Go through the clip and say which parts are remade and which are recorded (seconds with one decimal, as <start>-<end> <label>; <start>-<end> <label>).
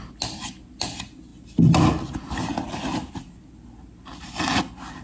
0.0-5.0 recorded